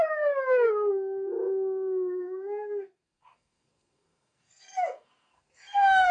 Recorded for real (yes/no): no